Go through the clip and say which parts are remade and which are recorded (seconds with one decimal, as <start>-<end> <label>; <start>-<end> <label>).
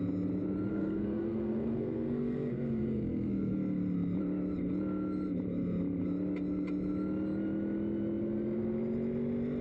0.0-0.7 recorded; 0.7-3.5 remade; 3.5-9.6 recorded